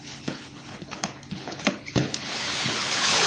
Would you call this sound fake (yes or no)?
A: yes